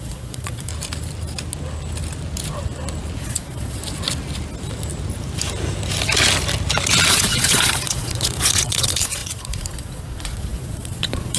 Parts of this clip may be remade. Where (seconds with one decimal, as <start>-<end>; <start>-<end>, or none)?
0.0-0.7; 3.2-3.8; 7.1-11.4